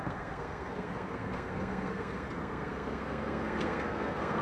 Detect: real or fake fake